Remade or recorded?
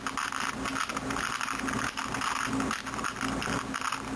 recorded